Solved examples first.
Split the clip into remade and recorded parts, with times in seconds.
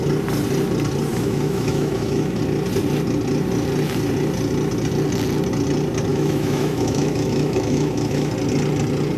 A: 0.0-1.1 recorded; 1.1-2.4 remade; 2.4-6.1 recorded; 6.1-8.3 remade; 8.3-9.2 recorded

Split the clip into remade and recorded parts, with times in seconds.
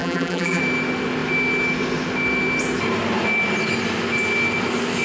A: 0.0-0.6 remade; 0.6-5.0 recorded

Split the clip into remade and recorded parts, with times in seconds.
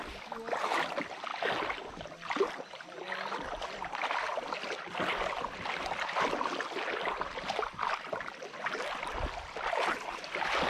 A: 0.0-10.7 recorded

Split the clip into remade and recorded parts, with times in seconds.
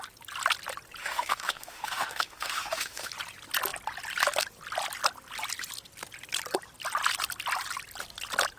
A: 0.0-1.0 recorded; 1.0-3.1 remade; 3.1-8.6 recorded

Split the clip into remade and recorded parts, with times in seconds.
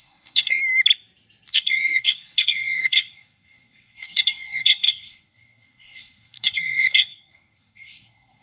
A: 0.0-0.6 remade; 0.6-1.5 recorded; 1.5-8.4 remade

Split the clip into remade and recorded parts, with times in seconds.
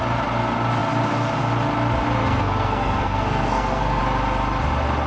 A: 0.0-2.2 recorded; 2.2-4.0 remade; 4.0-5.1 recorded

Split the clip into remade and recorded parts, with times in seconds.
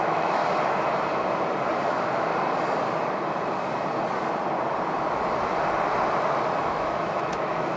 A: 0.0-0.4 remade; 0.4-1.9 recorded; 1.9-2.3 remade; 2.3-6.6 recorded; 6.6-7.8 remade